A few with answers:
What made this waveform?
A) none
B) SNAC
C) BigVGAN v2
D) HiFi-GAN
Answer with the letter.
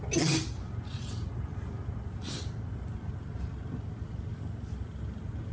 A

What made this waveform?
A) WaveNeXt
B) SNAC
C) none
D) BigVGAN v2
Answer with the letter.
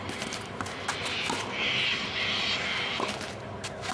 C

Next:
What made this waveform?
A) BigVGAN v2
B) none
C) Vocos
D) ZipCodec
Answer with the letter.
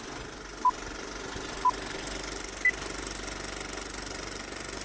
B